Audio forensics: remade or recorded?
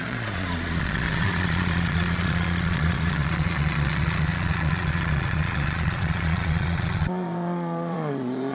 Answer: remade